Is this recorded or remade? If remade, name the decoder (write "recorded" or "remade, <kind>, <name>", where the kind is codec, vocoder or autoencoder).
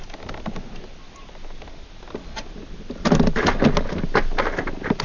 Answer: recorded